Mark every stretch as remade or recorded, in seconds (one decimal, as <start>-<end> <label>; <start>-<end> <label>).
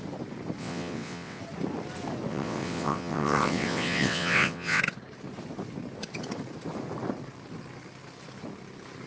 0.0-0.6 recorded; 0.6-1.4 remade; 1.4-2.3 recorded; 2.3-4.8 remade; 4.8-9.1 recorded